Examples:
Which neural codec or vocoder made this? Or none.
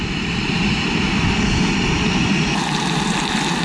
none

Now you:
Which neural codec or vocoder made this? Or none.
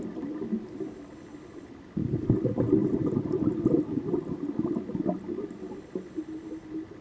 none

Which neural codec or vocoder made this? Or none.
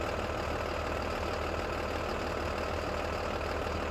none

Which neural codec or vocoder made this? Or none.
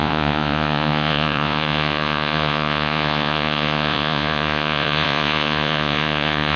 vocoder, Vocos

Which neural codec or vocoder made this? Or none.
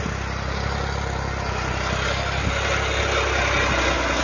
none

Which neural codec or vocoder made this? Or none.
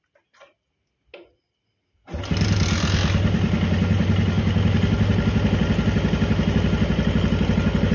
none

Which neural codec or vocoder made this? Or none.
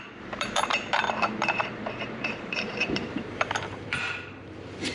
vocoder, BigVGAN v2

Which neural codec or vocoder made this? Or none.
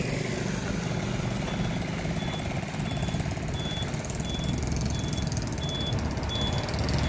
none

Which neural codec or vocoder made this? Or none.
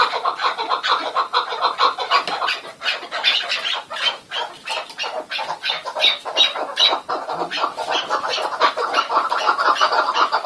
none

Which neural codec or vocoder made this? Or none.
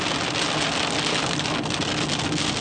none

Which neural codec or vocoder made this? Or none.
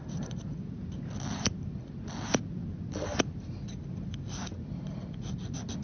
none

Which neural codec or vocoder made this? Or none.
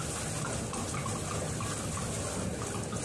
none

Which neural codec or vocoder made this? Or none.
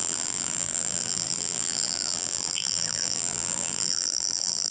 vocoder, BigVGAN v2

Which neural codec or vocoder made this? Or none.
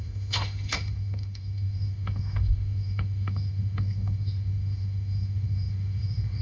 autoencoder, DAC-VAE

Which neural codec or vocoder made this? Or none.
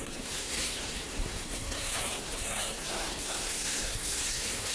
codec, SNAC